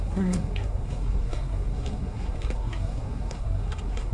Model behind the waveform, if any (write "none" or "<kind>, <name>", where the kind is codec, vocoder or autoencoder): codec, SNAC